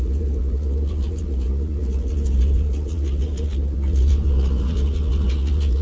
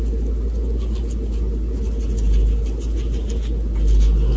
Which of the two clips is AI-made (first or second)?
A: first